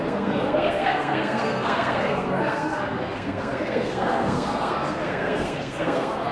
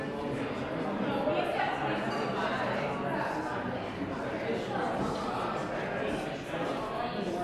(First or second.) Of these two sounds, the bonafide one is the second